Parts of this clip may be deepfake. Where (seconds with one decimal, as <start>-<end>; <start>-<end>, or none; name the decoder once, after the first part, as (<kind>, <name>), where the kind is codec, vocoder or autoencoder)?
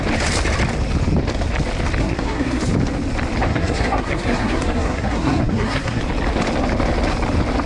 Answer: 2.0-2.6 (codec, SNAC); 3.5-6.0